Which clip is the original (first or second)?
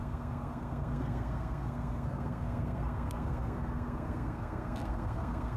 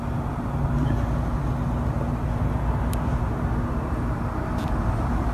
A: second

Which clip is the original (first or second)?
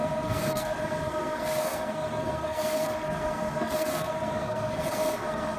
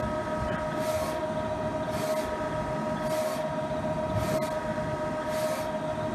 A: second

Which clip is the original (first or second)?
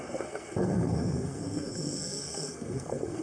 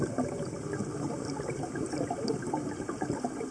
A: second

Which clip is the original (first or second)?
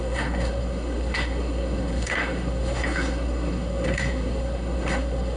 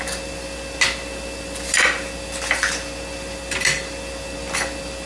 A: second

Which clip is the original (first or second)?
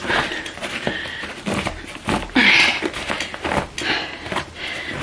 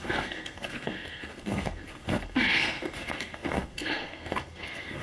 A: first